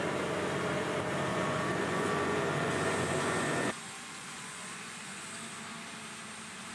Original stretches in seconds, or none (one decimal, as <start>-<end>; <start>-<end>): 0.0-1.3; 5.3-6.7

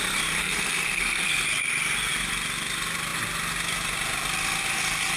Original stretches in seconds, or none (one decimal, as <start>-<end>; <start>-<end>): 0.0-0.4; 1.4-5.2

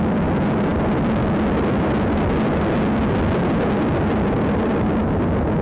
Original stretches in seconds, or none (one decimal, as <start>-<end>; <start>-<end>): 0.0-5.6

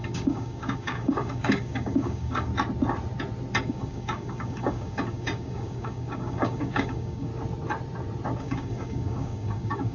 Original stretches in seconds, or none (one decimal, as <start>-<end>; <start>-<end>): 2.5-3.6; 7.3-8.4